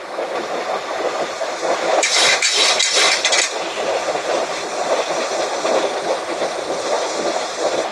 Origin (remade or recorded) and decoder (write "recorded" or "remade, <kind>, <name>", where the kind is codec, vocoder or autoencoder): recorded